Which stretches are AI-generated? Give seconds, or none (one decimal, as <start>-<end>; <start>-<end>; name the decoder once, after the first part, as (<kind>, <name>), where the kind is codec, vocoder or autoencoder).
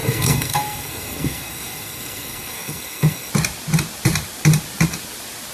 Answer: 0.0-3.3 (codec, SNAC)